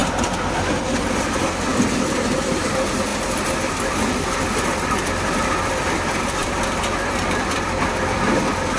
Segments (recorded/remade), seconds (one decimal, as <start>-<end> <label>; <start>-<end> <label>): 0.0-1.2 remade; 1.2-6.4 recorded; 6.4-8.4 remade; 8.4-8.8 recorded